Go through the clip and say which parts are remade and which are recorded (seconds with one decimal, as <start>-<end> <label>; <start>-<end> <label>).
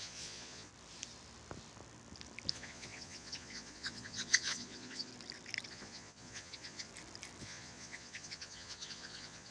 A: 0.0-0.7 remade; 0.7-2.5 recorded; 2.5-5.1 remade; 5.1-5.7 recorded; 5.7-6.9 remade; 6.9-7.4 recorded; 7.4-9.5 remade